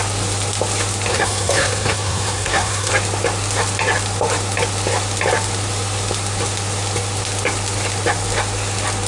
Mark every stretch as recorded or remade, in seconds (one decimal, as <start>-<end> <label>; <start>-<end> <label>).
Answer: 0.0-1.1 recorded; 1.1-2.9 remade; 2.9-9.1 recorded

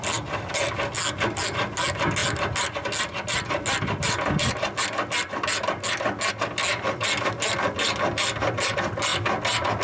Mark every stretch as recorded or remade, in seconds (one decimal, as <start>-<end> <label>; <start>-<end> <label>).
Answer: 0.0-9.8 recorded